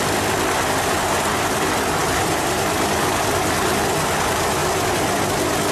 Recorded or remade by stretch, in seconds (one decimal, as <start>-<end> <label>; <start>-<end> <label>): 0.0-2.0 recorded; 2.0-3.2 remade; 3.2-4.6 recorded; 4.6-5.2 remade; 5.2-5.7 recorded